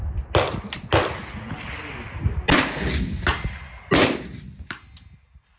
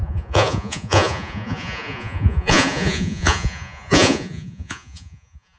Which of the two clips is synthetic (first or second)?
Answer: second